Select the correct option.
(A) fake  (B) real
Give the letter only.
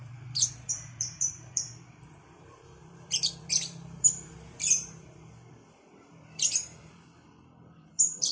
A